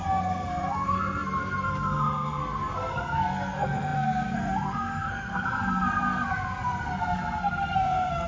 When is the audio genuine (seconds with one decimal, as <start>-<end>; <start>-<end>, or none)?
none